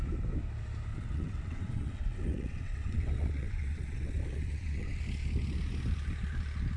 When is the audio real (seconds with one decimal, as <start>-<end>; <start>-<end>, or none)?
0.0-0.9; 5.0-6.8